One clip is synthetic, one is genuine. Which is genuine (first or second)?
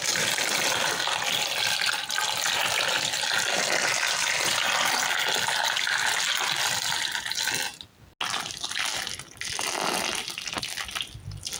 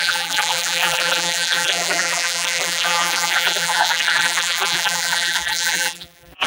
first